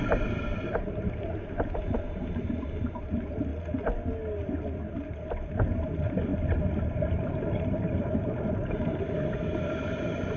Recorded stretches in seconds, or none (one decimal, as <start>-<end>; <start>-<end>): 3.5-5.1